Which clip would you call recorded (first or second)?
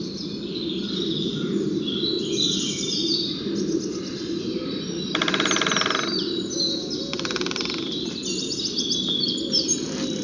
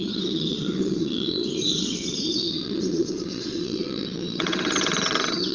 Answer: first